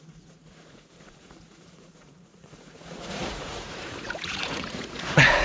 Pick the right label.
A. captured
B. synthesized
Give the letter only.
B